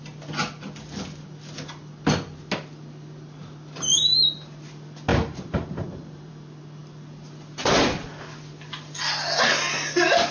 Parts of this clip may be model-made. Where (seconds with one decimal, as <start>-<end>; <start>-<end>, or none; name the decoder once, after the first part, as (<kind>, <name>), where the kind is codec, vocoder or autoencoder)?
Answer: 5.1-6.3 (vocoder, BigVGAN v2)